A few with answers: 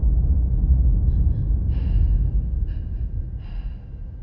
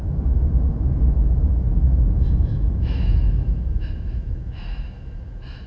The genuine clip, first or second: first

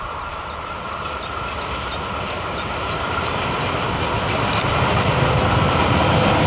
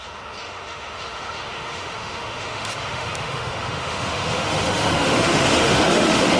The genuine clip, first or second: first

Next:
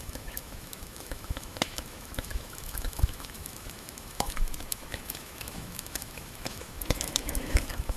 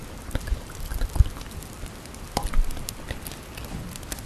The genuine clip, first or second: second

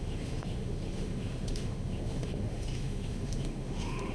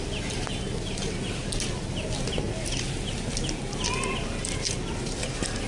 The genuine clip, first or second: second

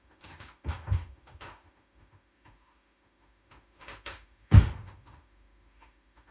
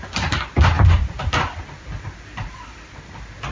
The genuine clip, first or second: second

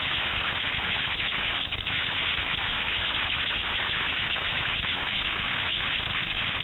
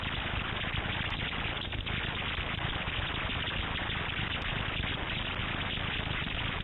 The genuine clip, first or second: second